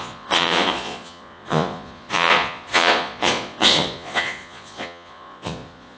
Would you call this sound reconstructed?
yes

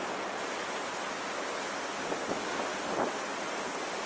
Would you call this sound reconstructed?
no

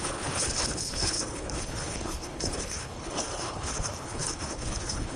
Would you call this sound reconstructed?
yes